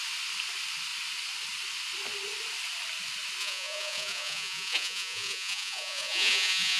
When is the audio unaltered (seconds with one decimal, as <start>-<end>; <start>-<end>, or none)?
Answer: 0.0-3.4